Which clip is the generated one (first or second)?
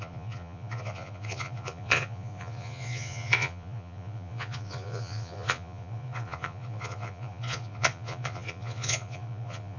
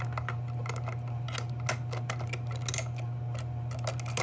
first